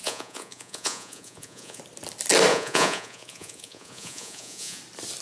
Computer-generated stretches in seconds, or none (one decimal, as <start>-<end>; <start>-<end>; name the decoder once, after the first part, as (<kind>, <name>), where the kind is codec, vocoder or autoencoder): 0.0-1.8 (vocoder, Vocos); 2.5-4.8